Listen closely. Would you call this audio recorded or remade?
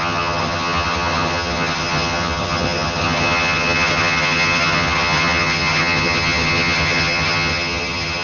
remade